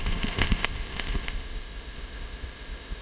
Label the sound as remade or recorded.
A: remade